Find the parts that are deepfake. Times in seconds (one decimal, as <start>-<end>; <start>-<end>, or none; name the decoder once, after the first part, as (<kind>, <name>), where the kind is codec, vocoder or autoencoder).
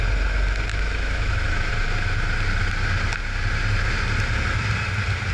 0.7-1.7 (autoencoder, DAC-VAE)